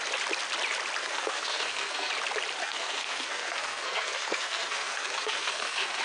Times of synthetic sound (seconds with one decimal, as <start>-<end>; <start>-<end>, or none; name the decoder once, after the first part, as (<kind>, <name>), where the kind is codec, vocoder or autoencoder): 1.0-2.1 (codec, SNAC); 2.6-6.0

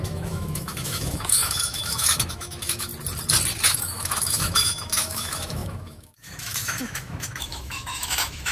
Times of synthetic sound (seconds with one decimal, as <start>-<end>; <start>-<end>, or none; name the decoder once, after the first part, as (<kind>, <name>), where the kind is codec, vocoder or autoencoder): 0.0-2.9 (autoencoder, DAC-VAE); 3.7-8.5

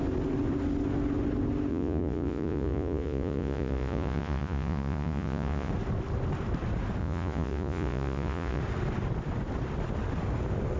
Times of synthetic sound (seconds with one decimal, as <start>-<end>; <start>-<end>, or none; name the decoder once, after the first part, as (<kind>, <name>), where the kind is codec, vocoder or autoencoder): 1.7-5.7 (vocoder, Vocos); 7.0-8.6